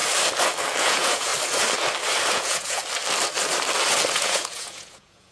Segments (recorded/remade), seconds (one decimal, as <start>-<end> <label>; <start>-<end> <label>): 0.0-0.8 recorded; 0.8-1.3 remade; 1.3-2.3 recorded; 2.3-2.8 remade; 2.8-4.1 recorded; 4.1-5.3 remade